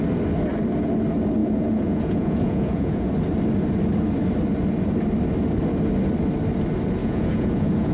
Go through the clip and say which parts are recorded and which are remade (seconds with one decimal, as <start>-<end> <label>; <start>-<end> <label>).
0.0-1.4 recorded; 1.4-3.1 remade; 3.1-7.0 recorded; 7.0-7.9 remade